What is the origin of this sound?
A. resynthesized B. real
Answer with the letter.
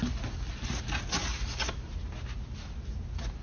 B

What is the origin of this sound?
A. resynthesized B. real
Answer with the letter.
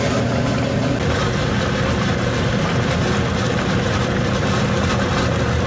B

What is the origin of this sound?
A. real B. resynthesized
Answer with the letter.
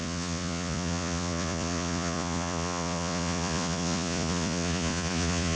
B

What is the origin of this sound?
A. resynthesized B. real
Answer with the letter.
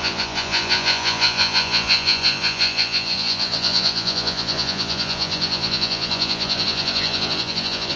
A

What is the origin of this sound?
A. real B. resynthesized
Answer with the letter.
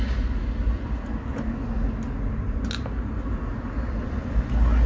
A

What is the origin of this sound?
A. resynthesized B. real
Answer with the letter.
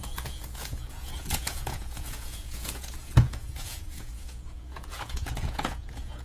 A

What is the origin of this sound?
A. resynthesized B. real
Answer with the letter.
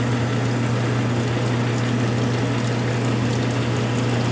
B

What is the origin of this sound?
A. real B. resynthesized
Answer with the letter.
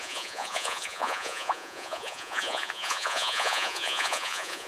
B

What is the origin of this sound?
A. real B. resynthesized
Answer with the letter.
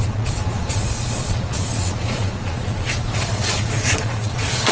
B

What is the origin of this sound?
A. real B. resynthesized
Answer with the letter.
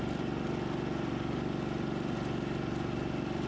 A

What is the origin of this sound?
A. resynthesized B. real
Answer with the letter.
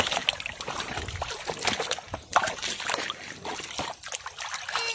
B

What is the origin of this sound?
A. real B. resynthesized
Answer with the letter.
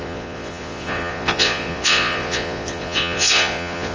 B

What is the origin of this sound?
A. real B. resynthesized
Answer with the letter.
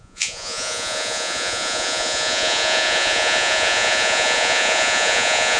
B